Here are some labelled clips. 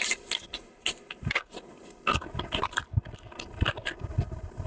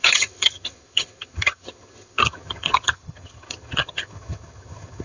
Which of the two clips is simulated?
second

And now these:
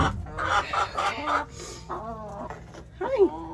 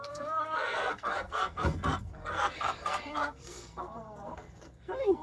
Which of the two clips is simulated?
second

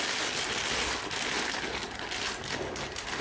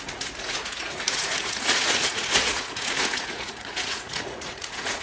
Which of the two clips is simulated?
second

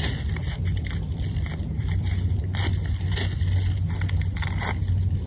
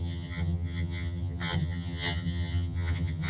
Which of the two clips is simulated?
second